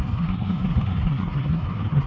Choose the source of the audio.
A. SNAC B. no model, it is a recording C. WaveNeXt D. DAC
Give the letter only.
A